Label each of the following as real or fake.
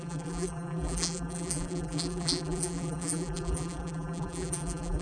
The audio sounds fake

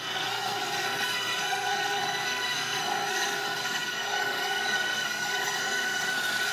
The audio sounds fake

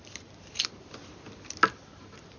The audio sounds real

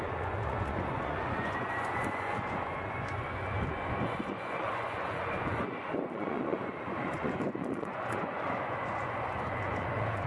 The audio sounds fake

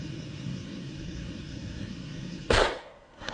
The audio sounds fake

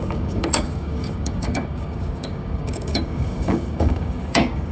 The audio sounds fake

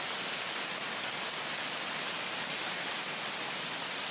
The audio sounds real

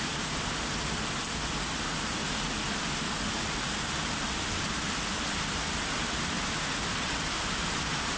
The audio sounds real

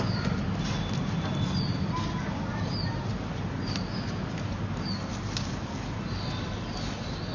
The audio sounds real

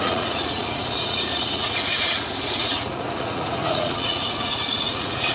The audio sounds fake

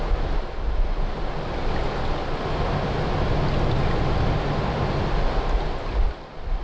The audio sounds real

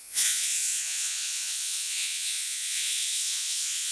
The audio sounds fake